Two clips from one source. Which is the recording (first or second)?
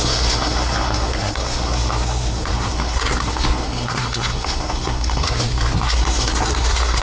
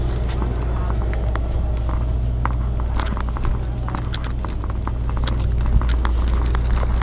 second